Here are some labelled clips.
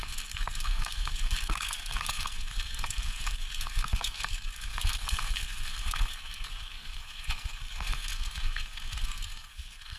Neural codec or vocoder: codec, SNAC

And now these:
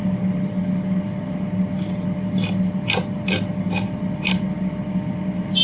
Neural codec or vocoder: none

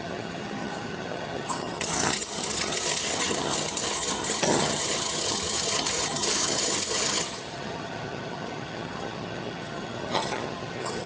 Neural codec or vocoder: vocoder, HiFi-GAN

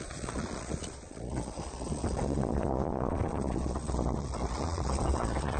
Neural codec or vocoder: vocoder, Vocos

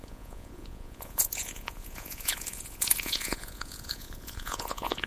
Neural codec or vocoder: vocoder, Vocos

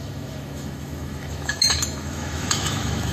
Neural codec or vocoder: autoencoder, DAC-VAE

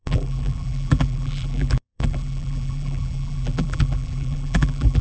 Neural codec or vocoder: vocoder, BigVGAN v2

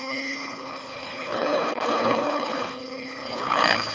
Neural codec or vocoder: codec, HILCodec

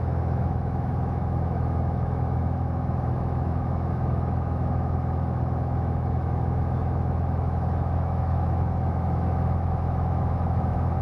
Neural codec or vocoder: autoencoder, DAC-VAE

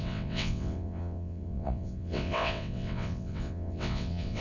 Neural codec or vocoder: vocoder, WaveNeXt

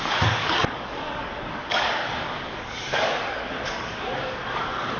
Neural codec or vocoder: codec, DAC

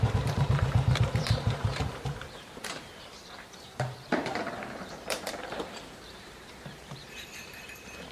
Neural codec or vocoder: vocoder, BigVGAN v2